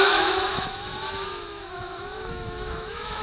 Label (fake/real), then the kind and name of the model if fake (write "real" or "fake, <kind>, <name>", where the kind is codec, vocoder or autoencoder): fake, autoencoder, DAC-VAE